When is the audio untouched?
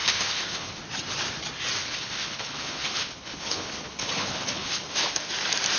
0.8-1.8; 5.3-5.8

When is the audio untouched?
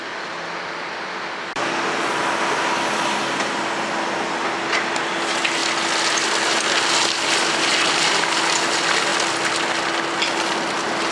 0.0-11.1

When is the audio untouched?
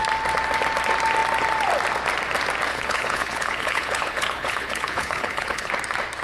0.0-2.7; 5.7-6.2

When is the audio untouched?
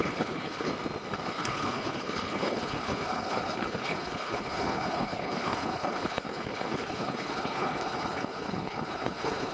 0.7-1.3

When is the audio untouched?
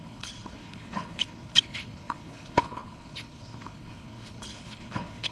none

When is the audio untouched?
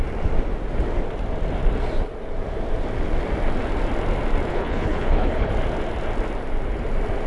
0.0-4.5; 5.5-7.3